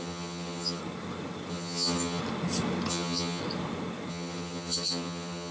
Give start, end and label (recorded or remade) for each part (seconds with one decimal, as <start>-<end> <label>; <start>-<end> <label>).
0.0-0.8 remade; 0.8-1.5 recorded; 1.5-2.2 remade; 2.2-2.9 recorded; 2.9-3.4 remade; 3.4-4.1 recorded; 4.1-5.5 remade